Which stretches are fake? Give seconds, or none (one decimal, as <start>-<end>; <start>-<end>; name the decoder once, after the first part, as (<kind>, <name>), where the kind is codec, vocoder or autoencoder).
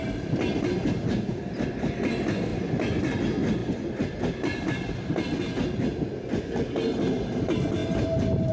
none